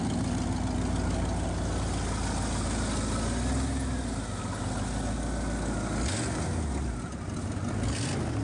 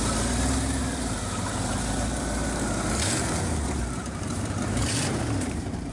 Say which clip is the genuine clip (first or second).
first